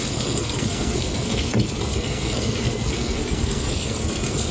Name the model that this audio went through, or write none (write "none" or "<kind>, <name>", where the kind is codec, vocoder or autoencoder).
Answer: codec, SNAC